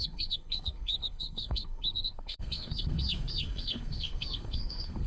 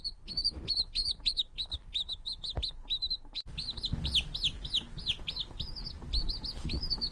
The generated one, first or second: first